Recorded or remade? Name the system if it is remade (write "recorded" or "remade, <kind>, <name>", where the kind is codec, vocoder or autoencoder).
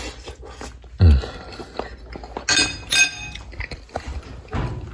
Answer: recorded